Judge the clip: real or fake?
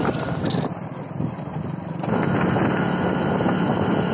real